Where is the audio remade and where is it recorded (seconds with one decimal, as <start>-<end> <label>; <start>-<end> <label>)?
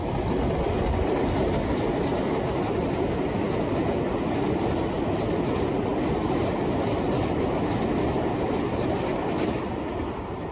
0.0-10.5 recorded